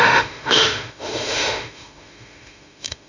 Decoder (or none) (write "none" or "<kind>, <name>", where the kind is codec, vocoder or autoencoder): autoencoder, DAC-VAE